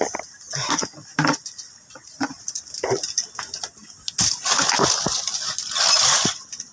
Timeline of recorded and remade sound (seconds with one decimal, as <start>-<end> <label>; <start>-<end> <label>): 0.0-2.0 recorded; 2.0-2.6 remade; 2.6-6.7 recorded